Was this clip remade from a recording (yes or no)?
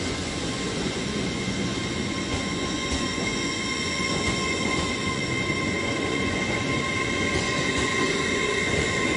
yes